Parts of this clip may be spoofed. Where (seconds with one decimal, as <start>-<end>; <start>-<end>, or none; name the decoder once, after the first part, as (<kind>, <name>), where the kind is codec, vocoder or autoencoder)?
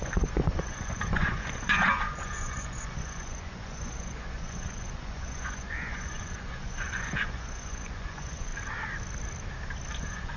0.0-8.5 (vocoder, Vocos); 10.0-10.4